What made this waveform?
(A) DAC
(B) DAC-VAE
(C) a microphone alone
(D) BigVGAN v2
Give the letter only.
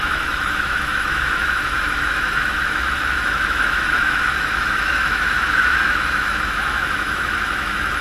B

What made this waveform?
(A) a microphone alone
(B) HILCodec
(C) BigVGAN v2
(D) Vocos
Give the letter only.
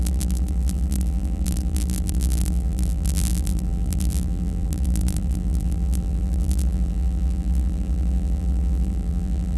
C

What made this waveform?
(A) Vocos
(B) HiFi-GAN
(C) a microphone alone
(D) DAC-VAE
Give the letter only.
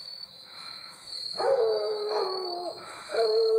D